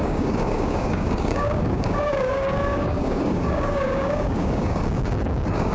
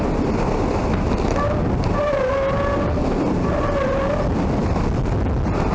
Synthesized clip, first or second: first